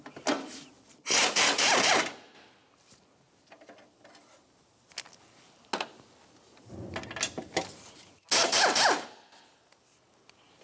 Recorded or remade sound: recorded